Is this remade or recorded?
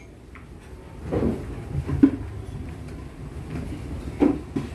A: recorded